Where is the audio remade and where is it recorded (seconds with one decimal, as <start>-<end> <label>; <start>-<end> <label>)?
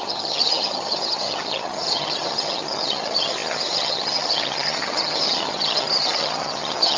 0.0-7.0 remade